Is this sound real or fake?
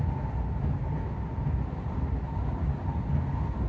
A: real